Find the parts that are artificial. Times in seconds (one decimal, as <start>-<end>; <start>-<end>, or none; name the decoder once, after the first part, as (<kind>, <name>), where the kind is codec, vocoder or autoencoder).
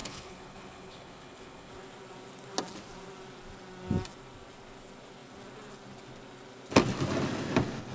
0.0-1.7 (codec, HILCodec)